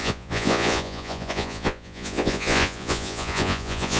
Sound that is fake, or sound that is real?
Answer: fake